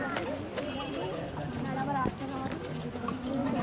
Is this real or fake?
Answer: real